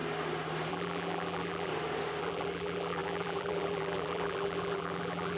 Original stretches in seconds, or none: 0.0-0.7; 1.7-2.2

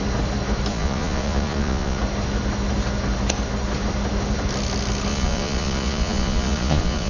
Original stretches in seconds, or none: 0.0-0.7; 2.0-5.1

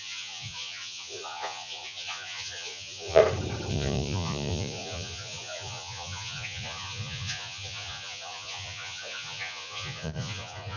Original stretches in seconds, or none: 3.2-3.7

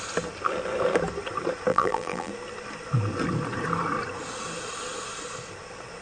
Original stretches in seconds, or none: 0.0-1.7; 2.3-6.0